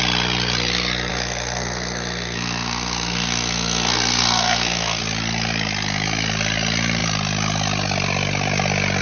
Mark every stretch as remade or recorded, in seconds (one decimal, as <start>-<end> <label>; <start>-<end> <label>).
0.0-1.1 recorded; 1.1-5.0 remade; 5.0-9.0 recorded